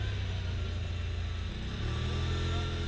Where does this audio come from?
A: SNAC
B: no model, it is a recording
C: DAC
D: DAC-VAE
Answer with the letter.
B